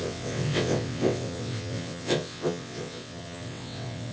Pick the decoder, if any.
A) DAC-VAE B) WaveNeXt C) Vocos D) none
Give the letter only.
B